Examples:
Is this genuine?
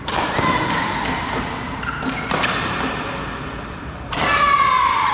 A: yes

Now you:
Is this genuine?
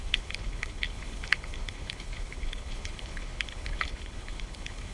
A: no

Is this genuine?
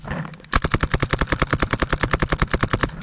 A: yes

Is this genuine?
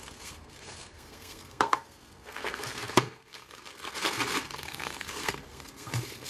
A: no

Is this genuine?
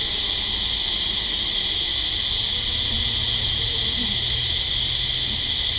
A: yes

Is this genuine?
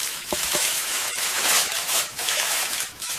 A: no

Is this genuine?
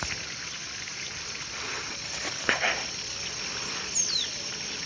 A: yes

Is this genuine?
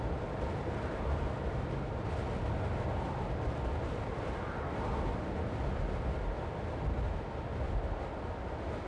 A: yes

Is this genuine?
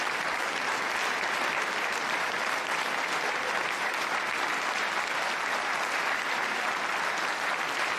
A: yes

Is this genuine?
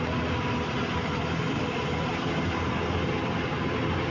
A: yes